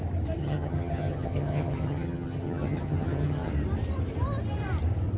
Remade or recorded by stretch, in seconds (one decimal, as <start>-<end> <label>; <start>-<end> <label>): 0.0-0.4 recorded; 0.4-3.5 remade; 3.5-5.2 recorded